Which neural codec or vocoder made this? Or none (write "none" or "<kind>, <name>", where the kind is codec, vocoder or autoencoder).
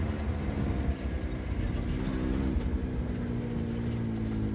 none